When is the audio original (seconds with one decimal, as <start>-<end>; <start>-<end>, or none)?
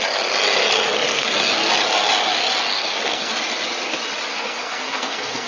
0.0-1.1; 1.7-2.7; 3.3-4.3